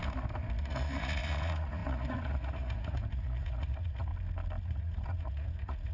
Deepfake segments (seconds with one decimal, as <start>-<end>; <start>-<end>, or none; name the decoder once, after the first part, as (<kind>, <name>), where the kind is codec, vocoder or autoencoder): 0.6-4.1 (vocoder, Vocos); 4.6-5.9